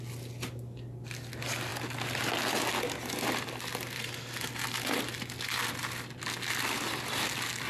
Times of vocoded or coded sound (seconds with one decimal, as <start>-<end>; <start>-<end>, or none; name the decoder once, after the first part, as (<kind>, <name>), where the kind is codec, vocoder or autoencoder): none